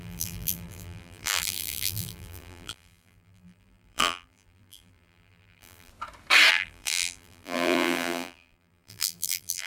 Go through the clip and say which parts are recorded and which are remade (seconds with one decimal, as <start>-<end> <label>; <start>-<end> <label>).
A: 0.0-5.9 remade; 5.9-6.5 recorded; 6.5-9.7 remade

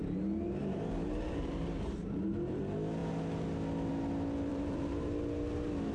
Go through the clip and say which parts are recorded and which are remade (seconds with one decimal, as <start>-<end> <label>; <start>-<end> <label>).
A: 0.0-2.6 remade; 2.6-4.5 recorded; 4.5-5.2 remade; 5.2-5.9 recorded